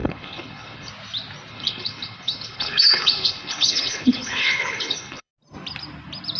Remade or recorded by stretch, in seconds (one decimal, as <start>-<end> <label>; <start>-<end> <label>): 0.0-0.9 remade; 0.9-1.5 recorded; 1.5-5.3 remade; 5.3-6.4 recorded